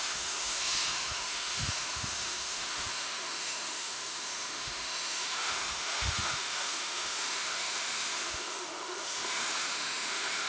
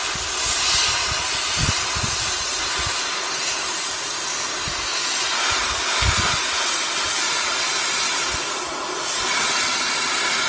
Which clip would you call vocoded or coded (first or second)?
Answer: first